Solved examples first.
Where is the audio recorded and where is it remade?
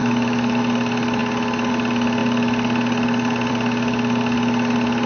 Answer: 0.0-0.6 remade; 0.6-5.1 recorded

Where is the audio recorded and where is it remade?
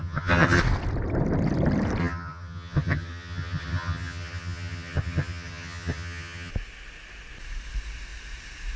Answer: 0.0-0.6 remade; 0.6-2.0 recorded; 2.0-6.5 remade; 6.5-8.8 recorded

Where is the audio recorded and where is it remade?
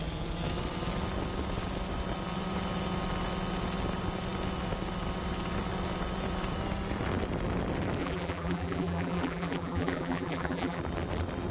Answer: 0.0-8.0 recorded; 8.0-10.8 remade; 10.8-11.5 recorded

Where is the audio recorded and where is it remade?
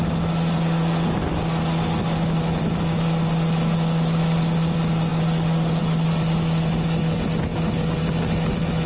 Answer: 0.0-8.9 recorded